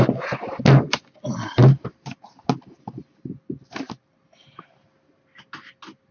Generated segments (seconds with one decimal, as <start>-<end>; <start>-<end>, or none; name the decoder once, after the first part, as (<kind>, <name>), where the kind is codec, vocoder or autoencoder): none